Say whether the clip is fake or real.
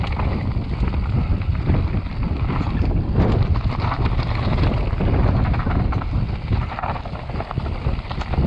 real